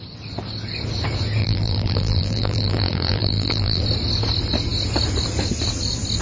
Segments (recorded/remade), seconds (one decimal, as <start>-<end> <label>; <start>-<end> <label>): 0.0-1.4 recorded; 1.4-3.8 remade; 3.8-6.2 recorded